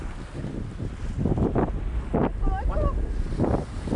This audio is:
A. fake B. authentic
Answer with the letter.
B